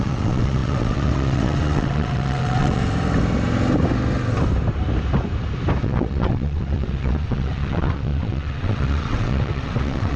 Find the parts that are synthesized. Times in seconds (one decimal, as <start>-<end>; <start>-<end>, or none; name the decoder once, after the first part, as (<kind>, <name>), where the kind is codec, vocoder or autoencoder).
0.0-2.8 (vocoder, WaveNeXt); 5.8-10.2